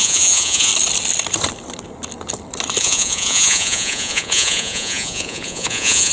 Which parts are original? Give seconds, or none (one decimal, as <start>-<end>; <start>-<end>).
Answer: 0.7-2.8